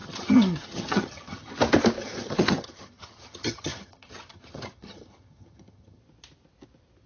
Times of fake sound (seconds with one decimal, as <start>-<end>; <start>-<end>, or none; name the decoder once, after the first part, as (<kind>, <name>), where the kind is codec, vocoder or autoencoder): 0.0-1.5 (vocoder, HiFi-GAN); 2.0-6.0